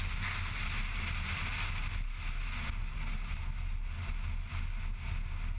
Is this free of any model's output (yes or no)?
yes